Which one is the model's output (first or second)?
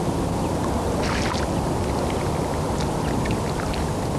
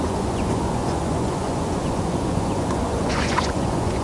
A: second